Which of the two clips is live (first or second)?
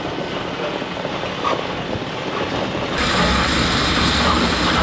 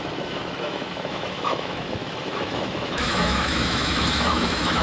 first